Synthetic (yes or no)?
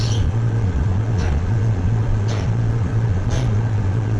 yes